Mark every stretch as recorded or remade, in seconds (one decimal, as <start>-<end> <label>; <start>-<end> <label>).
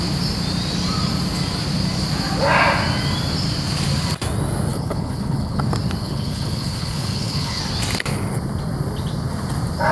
0.0-4.7 recorded; 4.7-5.6 remade; 5.6-6.0 recorded; 6.0-7.6 remade; 7.6-9.9 recorded